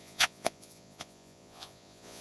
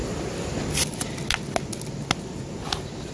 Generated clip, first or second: first